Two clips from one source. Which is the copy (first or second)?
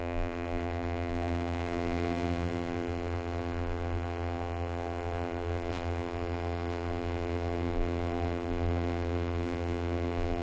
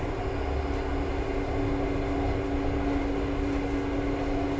first